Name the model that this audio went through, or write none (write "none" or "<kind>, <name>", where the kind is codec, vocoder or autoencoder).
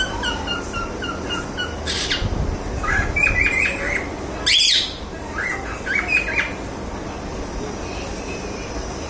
none